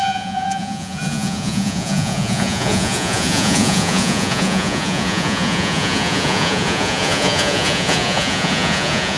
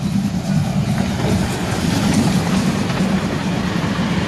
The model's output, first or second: first